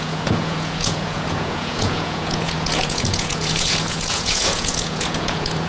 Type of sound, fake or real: fake